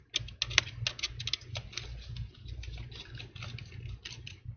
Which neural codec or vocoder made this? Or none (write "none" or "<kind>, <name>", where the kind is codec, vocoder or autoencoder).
none